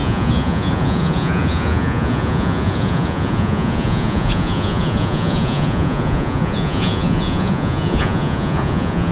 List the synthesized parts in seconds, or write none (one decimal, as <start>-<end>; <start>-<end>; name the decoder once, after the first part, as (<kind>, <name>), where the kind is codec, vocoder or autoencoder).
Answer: 0.0-9.1 (vocoder, Vocos)